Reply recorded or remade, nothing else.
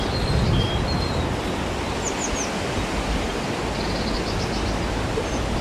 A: recorded